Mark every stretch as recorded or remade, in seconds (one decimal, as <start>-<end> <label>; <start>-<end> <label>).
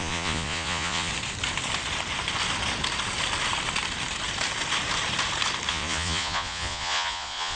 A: 0.0-1.1 remade; 1.1-5.7 recorded; 5.7-7.6 remade